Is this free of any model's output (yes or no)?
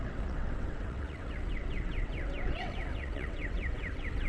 no